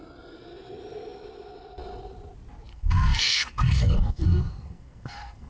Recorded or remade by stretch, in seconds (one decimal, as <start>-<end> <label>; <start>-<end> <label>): 0.0-2.7 recorded; 2.7-5.5 remade